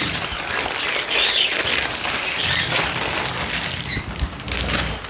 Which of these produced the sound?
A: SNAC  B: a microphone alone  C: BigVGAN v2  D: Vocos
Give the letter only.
B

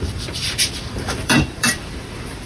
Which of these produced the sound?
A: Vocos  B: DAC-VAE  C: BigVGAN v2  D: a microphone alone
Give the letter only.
C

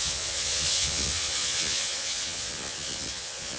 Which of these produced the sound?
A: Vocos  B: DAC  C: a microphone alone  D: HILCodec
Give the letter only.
A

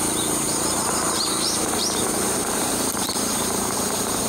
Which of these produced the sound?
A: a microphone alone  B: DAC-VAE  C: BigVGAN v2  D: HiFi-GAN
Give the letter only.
C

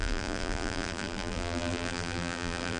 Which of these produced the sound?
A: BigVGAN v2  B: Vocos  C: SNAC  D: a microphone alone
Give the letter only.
A